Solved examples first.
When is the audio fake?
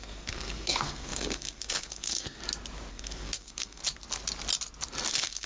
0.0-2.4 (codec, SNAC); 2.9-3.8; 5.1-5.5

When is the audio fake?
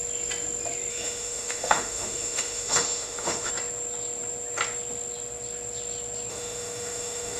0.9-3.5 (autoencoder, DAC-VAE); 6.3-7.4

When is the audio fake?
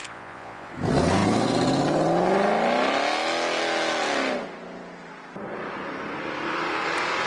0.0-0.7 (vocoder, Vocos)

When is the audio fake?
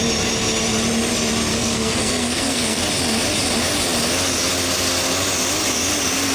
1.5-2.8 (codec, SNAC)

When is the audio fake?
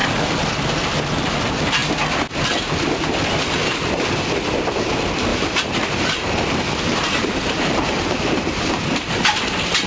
5.3-9.9 (vocoder, BigVGAN v2)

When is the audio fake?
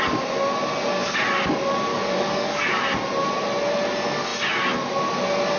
1.9-2.8 (codec, DAC)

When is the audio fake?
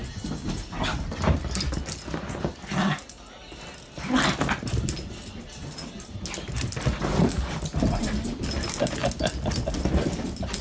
none